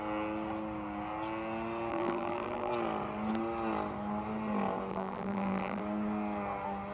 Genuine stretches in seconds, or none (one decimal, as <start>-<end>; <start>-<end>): 0.0-1.9; 2.7-4.9; 5.8-6.9